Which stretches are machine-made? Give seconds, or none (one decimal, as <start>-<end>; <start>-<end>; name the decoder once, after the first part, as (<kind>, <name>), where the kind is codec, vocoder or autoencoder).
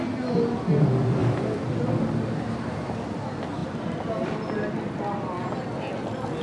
1.2-1.8 (vocoder, BigVGAN v2); 3.6-4.5